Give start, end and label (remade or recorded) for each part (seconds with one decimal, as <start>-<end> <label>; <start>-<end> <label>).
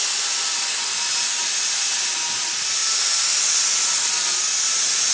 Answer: 0.0-5.1 recorded